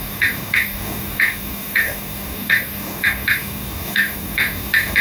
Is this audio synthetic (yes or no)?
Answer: yes